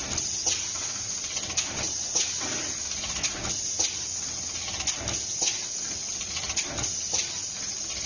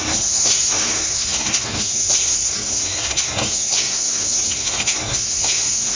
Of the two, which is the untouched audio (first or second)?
first